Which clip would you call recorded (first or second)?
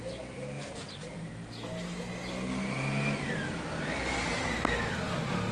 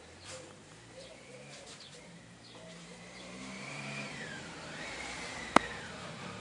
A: first